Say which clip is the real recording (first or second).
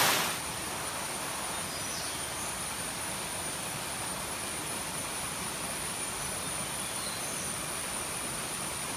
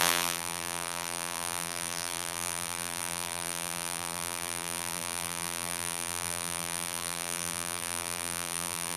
first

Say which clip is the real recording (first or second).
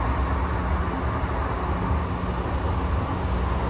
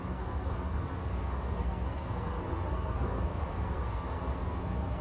first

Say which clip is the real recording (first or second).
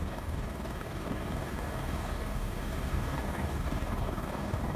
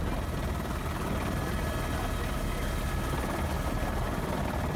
second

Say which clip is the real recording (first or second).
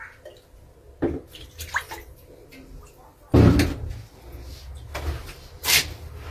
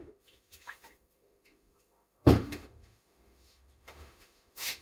first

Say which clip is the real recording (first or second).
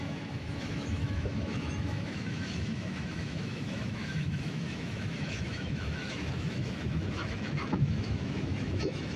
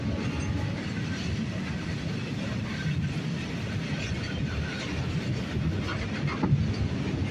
second